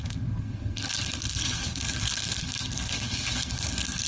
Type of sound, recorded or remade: remade